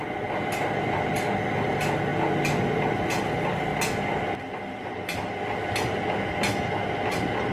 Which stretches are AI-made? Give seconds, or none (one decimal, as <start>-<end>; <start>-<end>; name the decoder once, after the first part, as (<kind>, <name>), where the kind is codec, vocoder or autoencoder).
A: none